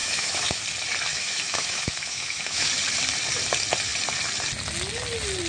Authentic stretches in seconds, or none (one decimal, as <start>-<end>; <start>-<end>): 0.6-1.1; 2.7-5.5